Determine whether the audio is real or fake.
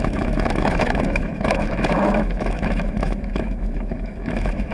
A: fake